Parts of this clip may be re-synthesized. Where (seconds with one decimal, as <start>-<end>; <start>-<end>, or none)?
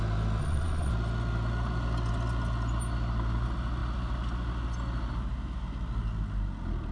0.4-0.9